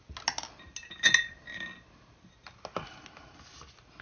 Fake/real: real